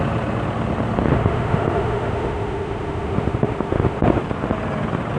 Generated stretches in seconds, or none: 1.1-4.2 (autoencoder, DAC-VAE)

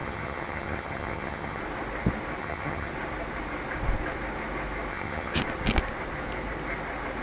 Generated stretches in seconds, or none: 0.0-1.6 (vocoder, HiFi-GAN); 2.4-2.9; 4.9-5.4

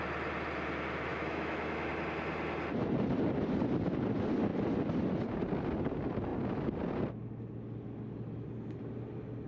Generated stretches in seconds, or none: 1.1-1.9 (autoencoder, DAC-VAE)

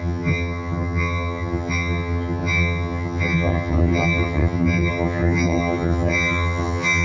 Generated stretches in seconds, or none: 0.0-7.0 (vocoder, HiFi-GAN)

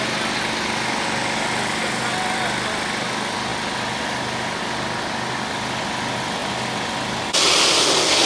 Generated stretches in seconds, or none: none

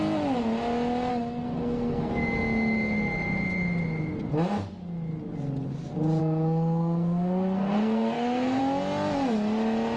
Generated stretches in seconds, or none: 1.1-2.1 (codec, SNAC); 6.2-8.6

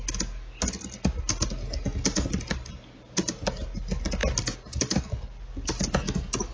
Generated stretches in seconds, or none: none

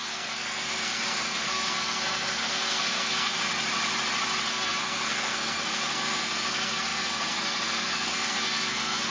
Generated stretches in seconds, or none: 0.0-3.5 (codec, SNAC); 4.5-9.1